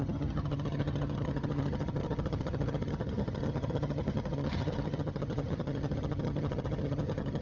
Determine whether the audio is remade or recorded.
remade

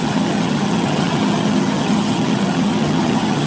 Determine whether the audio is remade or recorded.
remade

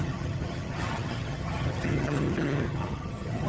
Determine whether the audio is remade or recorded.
remade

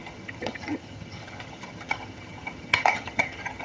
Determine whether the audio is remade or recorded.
remade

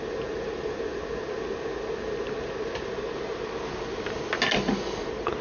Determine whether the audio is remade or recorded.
recorded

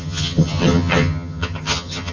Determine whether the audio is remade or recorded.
remade